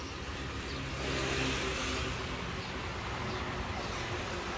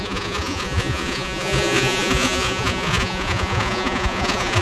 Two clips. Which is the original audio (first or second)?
first